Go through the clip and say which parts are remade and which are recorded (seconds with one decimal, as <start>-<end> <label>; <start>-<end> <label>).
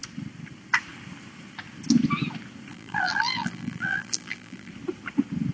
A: 0.0-2.7 recorded; 2.7-4.7 remade; 4.7-5.5 recorded